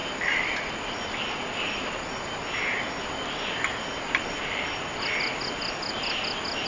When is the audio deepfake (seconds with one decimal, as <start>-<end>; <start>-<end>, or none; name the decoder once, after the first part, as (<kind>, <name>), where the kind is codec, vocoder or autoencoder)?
3.9-4.5 (vocoder, BigVGAN v2)